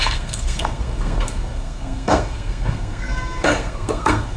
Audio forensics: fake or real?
fake